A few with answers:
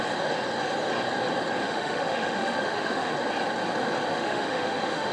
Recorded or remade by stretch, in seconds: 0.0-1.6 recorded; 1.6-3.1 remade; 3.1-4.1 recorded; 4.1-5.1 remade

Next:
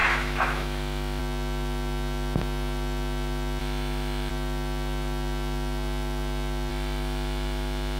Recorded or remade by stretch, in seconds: 0.0-1.2 remade; 1.2-3.6 recorded; 3.6-4.3 remade; 4.3-6.7 recorded; 6.7-8.0 remade

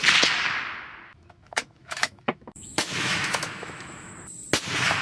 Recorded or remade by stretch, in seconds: 0.0-1.1 recorded; 1.1-4.1 remade; 4.1-5.0 recorded

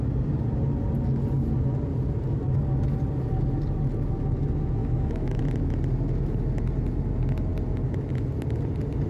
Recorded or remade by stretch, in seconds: 0.0-4.8 recorded; 4.8-5.4 remade; 5.4-9.1 recorded

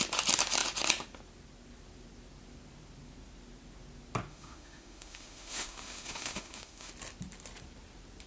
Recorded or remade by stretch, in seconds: 0.0-4.3 recorded; 4.3-6.9 remade; 6.9-8.3 recorded